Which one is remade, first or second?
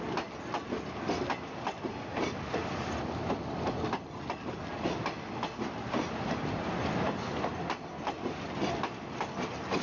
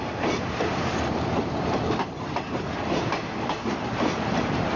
second